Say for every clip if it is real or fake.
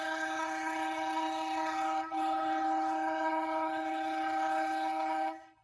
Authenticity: fake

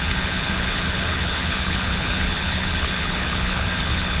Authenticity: fake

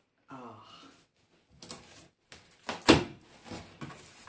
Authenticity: real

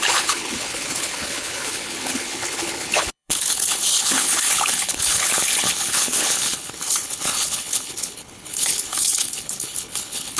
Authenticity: fake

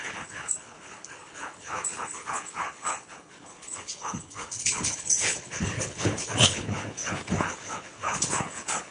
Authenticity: fake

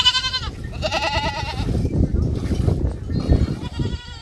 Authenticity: real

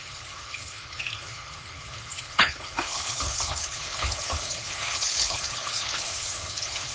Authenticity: fake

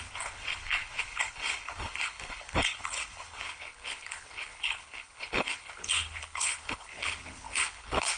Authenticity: fake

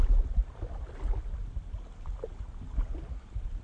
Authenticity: real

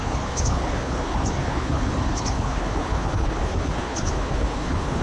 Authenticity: fake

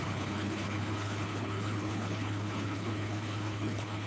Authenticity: fake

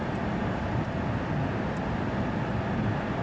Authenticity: real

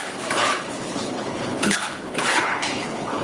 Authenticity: fake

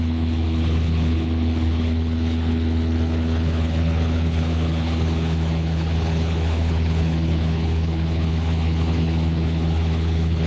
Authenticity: fake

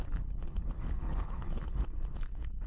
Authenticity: fake